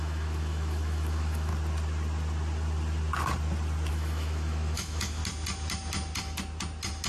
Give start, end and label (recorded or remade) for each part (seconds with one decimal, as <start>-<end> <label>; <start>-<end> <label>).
0.0-1.5 remade; 1.5-3.9 recorded; 3.9-5.2 remade; 5.2-7.1 recorded